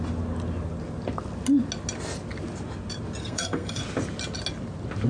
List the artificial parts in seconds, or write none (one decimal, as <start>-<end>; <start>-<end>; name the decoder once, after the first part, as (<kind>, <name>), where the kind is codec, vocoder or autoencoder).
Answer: 3.2-3.8 (codec, SNAC)